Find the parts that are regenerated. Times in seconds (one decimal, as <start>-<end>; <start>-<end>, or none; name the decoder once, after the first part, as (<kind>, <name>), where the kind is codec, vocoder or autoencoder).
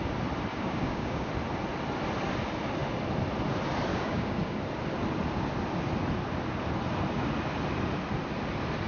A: 0.5-1.3 (codec, DAC); 3.9-4.6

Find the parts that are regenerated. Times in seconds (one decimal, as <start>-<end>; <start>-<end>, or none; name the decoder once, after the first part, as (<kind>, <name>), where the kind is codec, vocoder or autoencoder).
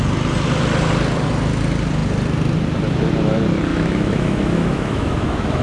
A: 3.7-5.6 (autoencoder, DAC-VAE)